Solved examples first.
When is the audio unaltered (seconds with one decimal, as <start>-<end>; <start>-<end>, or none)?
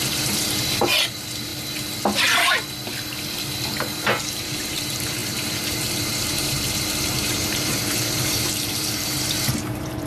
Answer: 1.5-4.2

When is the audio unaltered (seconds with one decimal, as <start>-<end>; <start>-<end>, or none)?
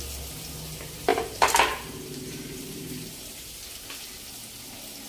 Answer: 0.0-1.1; 3.6-5.1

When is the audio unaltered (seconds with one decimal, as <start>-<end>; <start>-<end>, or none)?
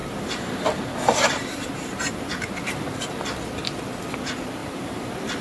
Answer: 3.2-4.6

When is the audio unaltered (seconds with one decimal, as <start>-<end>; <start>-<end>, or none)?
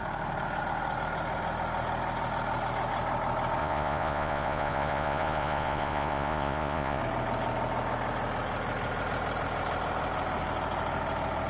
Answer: 0.0-3.6; 7.0-11.5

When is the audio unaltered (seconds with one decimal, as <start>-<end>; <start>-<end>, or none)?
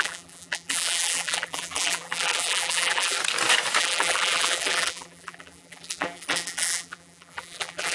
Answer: 3.2-3.8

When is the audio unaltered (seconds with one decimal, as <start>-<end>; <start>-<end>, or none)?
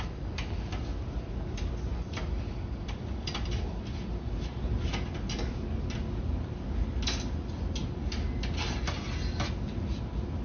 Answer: 0.0-1.9; 4.9-10.4